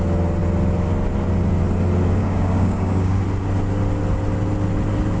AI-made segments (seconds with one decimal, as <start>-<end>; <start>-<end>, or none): 2.2-3.2